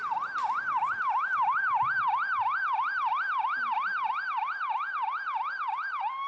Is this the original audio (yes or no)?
yes